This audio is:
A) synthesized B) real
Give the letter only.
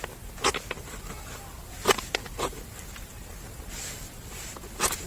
B